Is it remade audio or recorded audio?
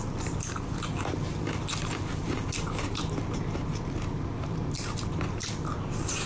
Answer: remade